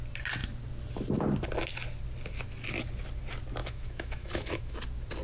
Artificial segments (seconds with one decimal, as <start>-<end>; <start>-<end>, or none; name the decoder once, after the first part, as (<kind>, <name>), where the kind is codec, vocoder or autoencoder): 3.6-4.8 (autoencoder, DAC-VAE)